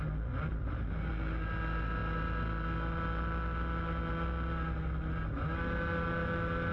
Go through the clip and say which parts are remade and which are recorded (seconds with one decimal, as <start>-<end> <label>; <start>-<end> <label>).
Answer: 0.0-0.5 recorded; 0.5-1.1 remade; 1.1-6.7 recorded